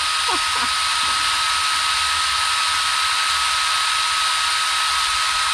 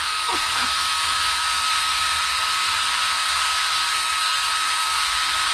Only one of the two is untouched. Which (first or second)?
first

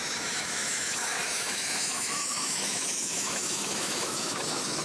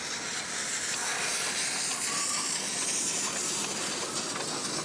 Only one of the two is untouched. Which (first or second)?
second